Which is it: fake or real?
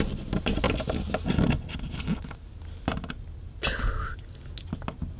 real